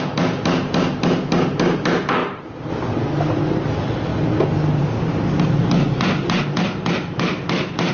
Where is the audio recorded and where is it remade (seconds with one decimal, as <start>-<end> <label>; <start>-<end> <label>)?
0.0-7.9 recorded